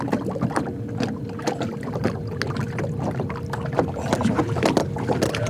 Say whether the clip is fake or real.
real